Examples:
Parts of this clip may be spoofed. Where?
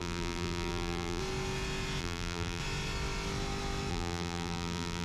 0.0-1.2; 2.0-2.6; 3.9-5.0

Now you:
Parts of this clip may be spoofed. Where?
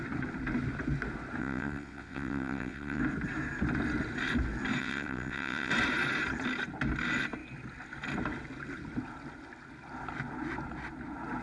1.4-3.0; 4.8-5.7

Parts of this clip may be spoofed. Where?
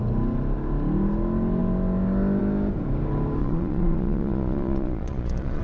3.4-5.6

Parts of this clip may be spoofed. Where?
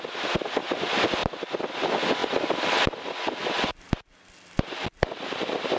2.2-3.0; 3.7-4.9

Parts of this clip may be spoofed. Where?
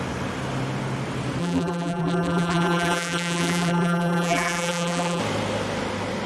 1.4-5.2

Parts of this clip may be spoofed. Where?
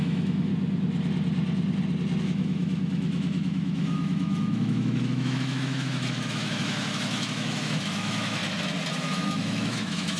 0.0-0.5; 2.2-8.4; 8.9-10.2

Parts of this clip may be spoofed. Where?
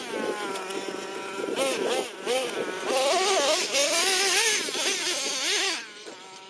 none